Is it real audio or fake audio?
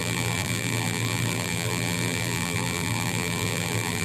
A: fake